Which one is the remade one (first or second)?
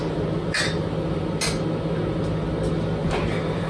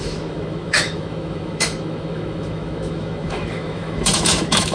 second